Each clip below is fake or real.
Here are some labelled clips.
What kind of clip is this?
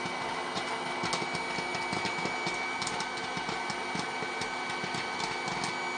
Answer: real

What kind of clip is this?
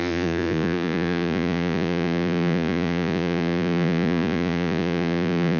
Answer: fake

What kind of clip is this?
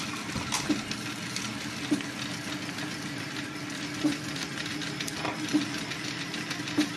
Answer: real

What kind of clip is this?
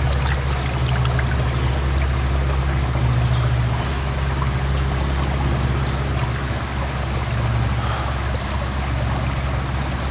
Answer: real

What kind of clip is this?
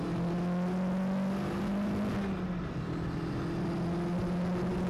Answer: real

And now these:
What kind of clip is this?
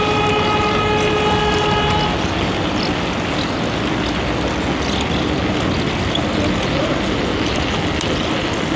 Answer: real